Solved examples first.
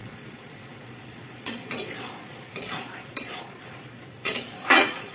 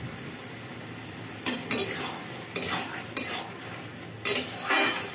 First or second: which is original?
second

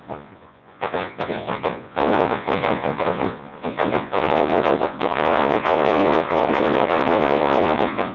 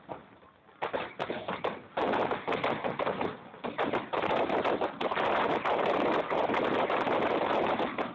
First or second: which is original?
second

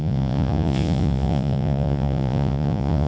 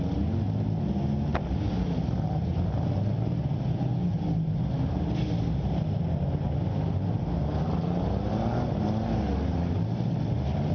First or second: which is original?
second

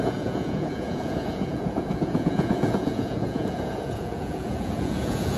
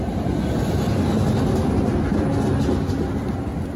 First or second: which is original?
second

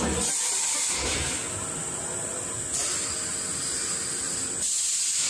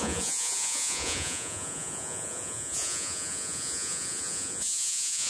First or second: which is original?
first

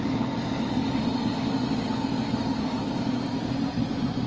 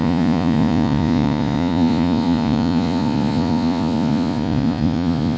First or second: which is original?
first